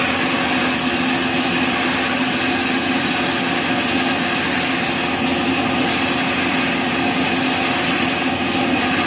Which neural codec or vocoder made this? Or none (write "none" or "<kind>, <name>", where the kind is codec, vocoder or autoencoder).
none